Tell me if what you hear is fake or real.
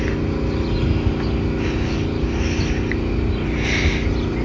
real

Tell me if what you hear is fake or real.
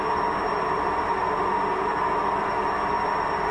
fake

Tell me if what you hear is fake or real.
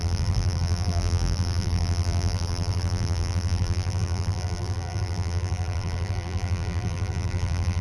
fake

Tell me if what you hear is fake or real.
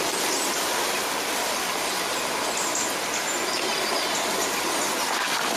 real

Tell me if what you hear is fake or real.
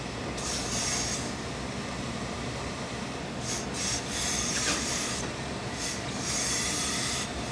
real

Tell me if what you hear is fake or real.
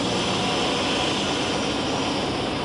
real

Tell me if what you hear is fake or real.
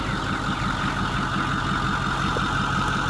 real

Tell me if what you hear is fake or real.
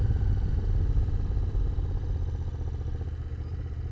real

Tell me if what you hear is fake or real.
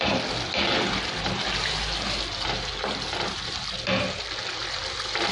real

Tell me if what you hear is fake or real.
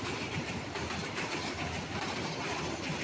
fake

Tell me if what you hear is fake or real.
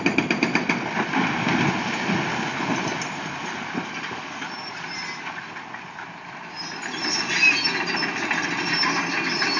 real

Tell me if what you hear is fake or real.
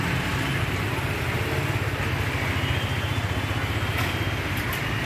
real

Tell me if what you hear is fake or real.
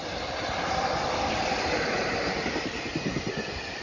fake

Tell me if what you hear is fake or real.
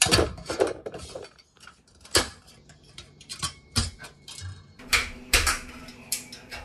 fake